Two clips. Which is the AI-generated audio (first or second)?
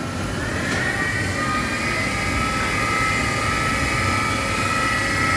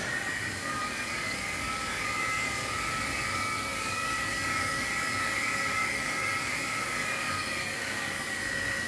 second